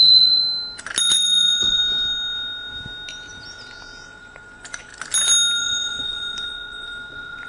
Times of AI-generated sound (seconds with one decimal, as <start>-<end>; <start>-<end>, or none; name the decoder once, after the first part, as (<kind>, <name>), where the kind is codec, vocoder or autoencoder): 0.0-0.4 (vocoder, Vocos); 1.0-1.8; 4.2-4.9; 5.6-7.5

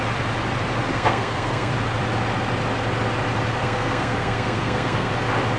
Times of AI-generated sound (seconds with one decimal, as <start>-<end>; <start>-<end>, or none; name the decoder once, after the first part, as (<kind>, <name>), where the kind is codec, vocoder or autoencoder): 0.9-1.7 (codec, SNAC); 3.6-5.1

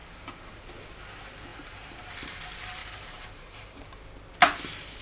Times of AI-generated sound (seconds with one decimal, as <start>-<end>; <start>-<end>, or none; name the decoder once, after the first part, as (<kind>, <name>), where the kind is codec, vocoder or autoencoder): 0.0-0.6 (vocoder, BigVGAN v2); 1.5-2.4; 2.8-3.8

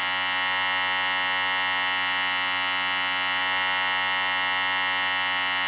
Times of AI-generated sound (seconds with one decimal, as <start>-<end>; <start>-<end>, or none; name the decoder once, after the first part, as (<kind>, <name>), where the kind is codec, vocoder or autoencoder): none

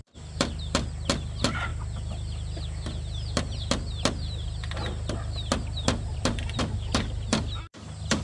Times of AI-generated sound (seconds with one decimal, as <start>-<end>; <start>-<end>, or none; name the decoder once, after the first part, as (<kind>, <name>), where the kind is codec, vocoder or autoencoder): none

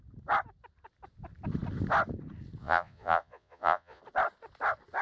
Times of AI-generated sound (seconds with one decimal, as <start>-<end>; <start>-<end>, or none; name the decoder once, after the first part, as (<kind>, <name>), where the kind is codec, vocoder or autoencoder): 2.6-4.0 (vocoder, Vocos)

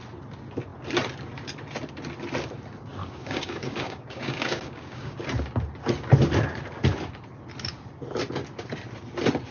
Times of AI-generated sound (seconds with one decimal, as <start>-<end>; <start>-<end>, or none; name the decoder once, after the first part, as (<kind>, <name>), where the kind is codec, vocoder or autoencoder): 3.0-5.2 (codec, DAC)